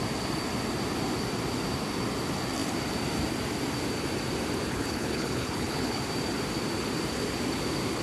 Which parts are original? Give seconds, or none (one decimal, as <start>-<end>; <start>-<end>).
0.0-4.7; 6.0-8.0